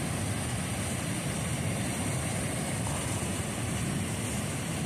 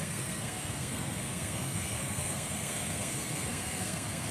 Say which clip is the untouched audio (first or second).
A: first